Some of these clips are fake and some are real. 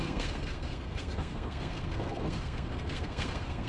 fake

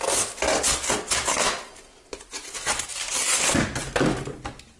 real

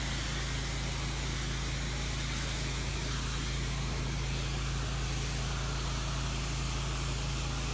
real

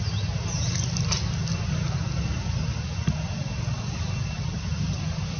real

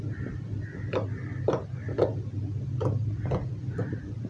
real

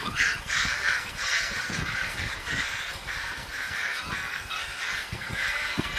fake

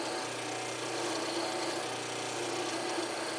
real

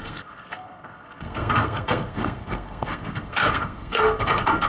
fake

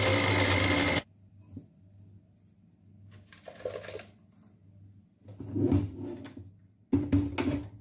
real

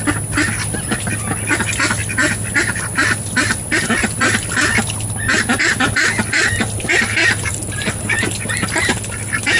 real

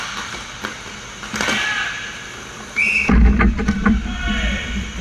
real